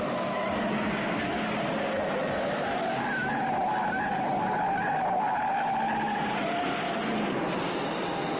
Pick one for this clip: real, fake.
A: real